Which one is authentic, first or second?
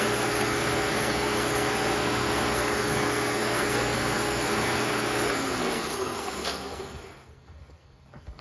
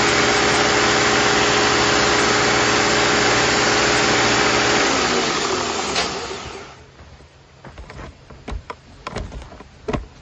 second